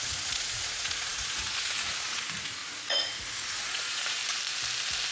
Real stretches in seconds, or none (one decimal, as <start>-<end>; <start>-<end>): 4.2-5.1